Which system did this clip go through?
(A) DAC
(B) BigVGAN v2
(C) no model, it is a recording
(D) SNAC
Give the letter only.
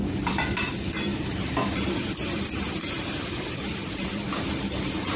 B